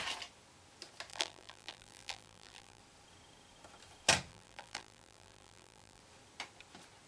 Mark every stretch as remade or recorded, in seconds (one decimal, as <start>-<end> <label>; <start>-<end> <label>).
0.0-1.1 recorded; 1.1-2.8 remade; 2.8-4.3 recorded; 4.3-6.0 remade; 6.0-7.1 recorded